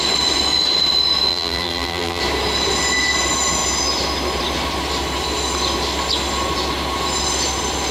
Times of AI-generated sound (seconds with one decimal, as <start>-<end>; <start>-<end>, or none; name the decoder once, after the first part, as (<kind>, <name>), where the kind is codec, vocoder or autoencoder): 1.3-2.2 (vocoder, BigVGAN v2)